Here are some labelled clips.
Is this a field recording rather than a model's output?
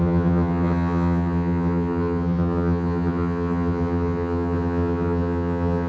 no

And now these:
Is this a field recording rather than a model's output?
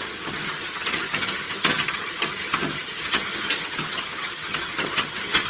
no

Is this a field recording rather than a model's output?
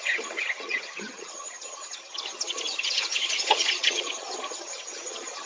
no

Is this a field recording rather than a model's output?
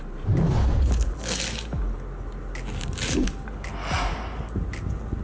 yes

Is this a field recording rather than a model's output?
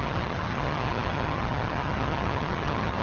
no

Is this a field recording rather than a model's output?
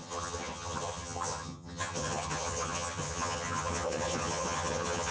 no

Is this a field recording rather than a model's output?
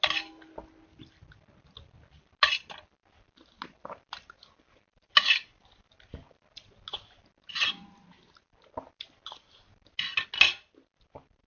yes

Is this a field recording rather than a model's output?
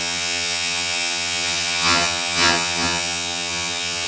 no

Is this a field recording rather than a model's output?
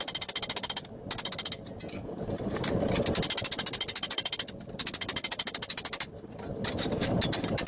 yes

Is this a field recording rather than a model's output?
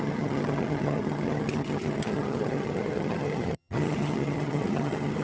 no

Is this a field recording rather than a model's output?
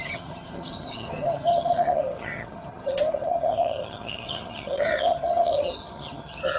no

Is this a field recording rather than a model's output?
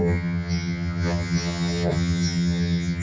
no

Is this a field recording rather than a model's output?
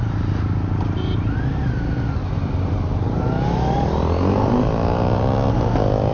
yes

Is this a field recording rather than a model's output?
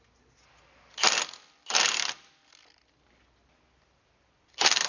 yes